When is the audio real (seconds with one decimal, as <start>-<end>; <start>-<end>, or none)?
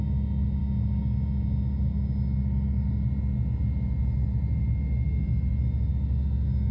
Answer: 0.0-6.7